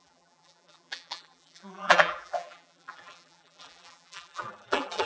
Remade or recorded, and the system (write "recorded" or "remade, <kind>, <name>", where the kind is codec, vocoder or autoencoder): remade, vocoder, BigVGAN v2